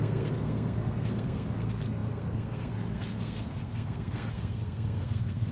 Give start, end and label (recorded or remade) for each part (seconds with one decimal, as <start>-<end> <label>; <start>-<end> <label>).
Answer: 0.0-5.5 remade